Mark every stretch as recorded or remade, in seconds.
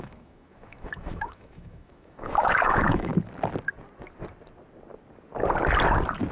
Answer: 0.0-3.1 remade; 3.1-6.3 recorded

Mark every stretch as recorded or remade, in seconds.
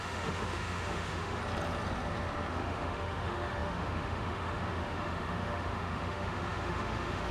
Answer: 0.0-1.4 remade; 1.4-2.5 recorded; 2.5-7.3 remade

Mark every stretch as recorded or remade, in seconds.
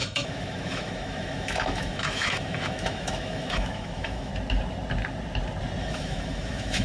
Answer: 0.0-4.3 remade; 4.3-5.8 recorded; 5.8-6.8 remade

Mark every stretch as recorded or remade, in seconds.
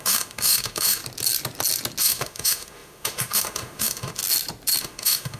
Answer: 0.0-1.0 remade; 1.0-2.0 recorded; 2.0-4.2 remade; 4.2-4.8 recorded; 4.8-5.4 remade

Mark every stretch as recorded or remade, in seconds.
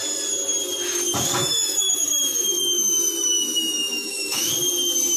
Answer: 0.0-1.4 recorded; 1.4-4.5 remade; 4.5-5.2 recorded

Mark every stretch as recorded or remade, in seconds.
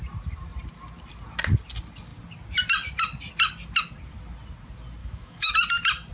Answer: 0.0-5.0 recorded; 5.0-5.5 remade; 5.5-6.1 recorded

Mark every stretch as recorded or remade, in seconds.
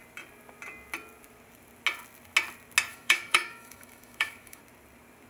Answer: 0.0-2.9 recorded; 2.9-4.6 remade; 4.6-5.3 recorded